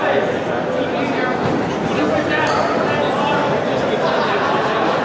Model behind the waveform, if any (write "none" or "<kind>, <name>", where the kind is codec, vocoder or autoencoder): none